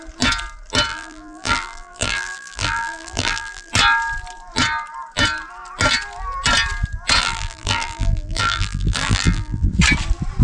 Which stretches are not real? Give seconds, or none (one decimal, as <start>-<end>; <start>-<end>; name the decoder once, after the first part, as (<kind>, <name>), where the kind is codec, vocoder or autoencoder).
0.9-3.7 (vocoder, BigVGAN v2); 7.2-9.7